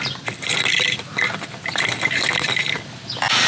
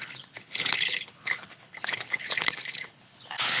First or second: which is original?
first